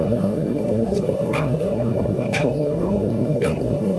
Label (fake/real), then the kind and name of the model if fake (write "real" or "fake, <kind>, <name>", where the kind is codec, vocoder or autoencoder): fake, codec, SNAC